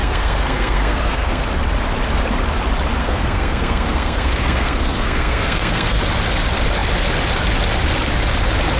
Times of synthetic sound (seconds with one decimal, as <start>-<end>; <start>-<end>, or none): 0.0-1.4; 3.0-6.0